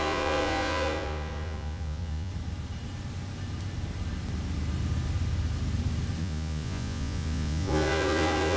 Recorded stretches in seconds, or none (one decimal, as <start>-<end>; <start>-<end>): 2.3-6.2